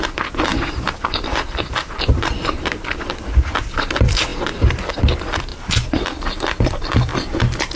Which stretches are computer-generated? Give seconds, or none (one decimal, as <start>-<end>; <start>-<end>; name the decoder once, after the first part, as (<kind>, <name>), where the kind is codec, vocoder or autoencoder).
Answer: 0.0-4.3 (vocoder, BigVGAN v2); 4.9-7.1

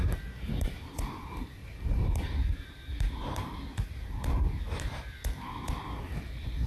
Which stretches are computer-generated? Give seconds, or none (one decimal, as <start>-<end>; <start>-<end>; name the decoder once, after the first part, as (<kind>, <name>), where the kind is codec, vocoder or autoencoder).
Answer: 1.6-4.6 (vocoder, BigVGAN v2)